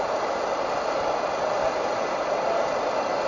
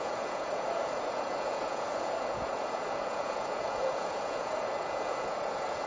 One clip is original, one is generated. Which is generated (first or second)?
second